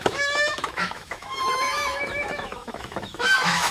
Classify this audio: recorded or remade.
remade